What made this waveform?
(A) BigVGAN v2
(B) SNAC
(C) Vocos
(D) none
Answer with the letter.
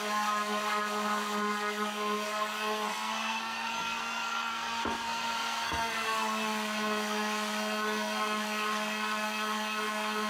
B